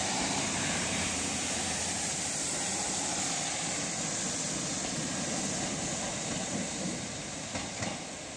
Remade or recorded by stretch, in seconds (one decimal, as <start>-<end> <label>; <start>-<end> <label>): 0.0-2.7 remade; 2.7-8.4 recorded